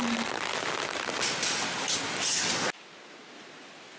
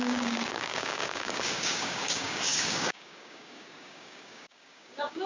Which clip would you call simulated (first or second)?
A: second